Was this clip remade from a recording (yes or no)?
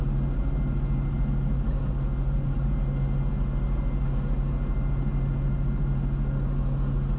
no